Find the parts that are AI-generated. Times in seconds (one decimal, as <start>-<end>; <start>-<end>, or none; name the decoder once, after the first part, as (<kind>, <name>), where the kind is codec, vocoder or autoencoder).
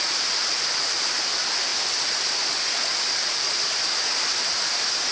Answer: none